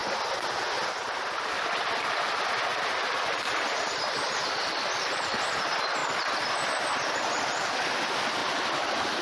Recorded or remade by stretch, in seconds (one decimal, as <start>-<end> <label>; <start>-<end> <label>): 0.0-9.2 recorded